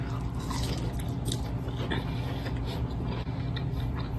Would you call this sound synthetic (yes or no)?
no